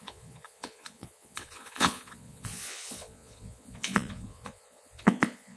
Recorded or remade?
remade